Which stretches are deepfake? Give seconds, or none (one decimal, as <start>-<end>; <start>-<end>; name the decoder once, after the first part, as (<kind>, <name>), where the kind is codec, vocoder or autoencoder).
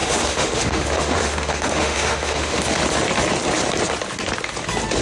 0.0-2.8 (autoencoder, DAC-VAE)